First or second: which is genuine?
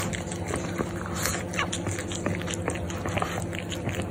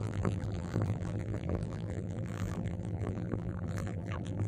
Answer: first